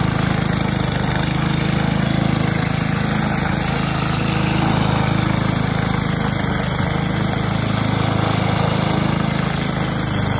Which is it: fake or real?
real